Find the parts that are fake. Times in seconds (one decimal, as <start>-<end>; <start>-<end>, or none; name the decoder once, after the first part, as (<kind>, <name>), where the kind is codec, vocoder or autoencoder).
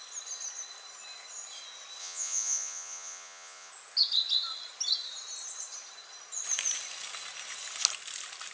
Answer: 2.0-3.7 (vocoder, Vocos)